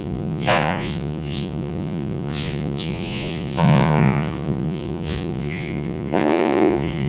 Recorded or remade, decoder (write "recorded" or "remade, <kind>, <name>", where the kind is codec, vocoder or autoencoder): remade, vocoder, Vocos